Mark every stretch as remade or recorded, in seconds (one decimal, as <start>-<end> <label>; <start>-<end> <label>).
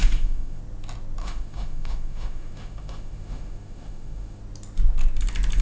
0.0-0.6 remade; 0.6-1.2 recorded; 1.2-4.4 remade; 4.4-5.6 recorded